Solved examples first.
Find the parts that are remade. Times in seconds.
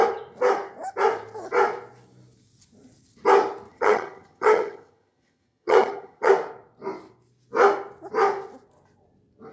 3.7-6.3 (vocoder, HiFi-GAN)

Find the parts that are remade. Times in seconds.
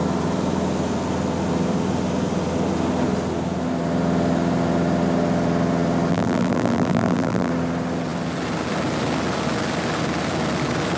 6.1-7.5 (vocoder, BigVGAN v2)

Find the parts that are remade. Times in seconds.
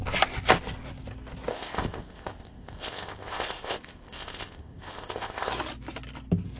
1.5-5.5 (codec, ZipCodec)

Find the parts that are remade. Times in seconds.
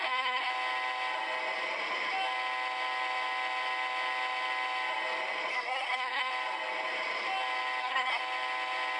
0.0-0.5 (codec, SNAC); 5.5-6.3; 7.8-8.2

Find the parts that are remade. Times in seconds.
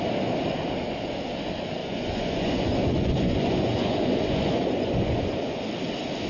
1.8-5.6 (vocoder, Vocos)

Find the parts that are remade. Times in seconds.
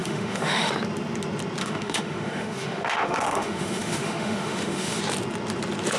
0.0-0.7 (autoencoder, DAC-VAE); 1.6-5.0